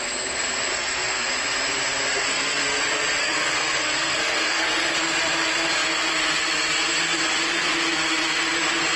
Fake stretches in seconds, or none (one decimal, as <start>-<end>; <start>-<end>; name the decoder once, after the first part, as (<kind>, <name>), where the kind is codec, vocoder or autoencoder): 0.7-1.3 (codec, SNAC); 2.1-2.8; 3.2-5.0